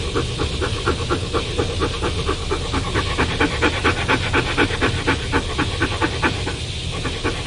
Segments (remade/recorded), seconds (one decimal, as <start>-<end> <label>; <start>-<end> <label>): 0.0-7.5 recorded